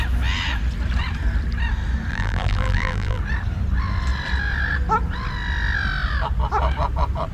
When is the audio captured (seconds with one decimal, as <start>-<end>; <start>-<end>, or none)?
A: 0.0-2.1; 3.2-7.3